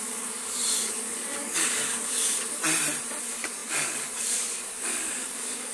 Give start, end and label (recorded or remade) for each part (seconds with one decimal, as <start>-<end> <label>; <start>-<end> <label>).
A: 0.0-2.6 remade; 2.6-3.2 recorded; 3.2-5.7 remade